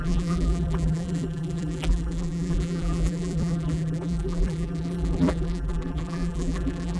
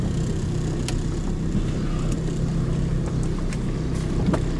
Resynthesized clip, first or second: first